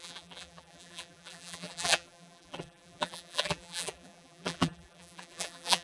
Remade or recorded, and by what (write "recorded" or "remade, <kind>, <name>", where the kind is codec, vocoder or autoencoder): remade, vocoder, BigVGAN v2